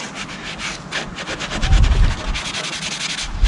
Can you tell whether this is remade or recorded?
recorded